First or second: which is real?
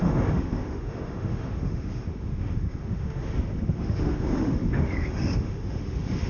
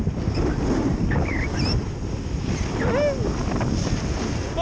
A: second